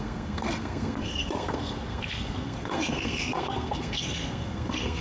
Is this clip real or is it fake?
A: fake